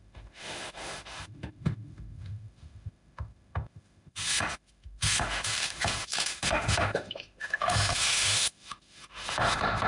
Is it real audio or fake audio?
fake